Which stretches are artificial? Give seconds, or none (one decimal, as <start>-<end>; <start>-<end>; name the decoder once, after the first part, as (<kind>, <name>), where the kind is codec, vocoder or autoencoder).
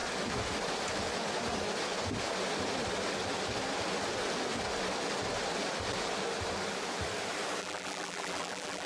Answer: 7.6-8.9 (vocoder, BigVGAN v2)